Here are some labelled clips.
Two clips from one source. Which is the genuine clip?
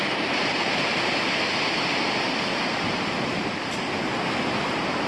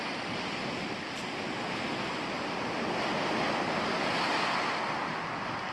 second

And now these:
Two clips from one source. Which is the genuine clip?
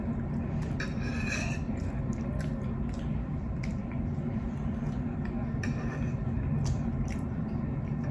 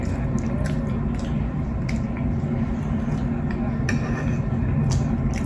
second